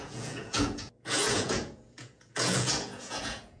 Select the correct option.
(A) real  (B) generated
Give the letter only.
B